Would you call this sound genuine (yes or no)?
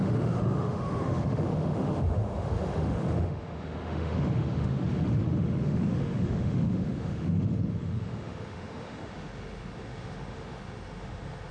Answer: no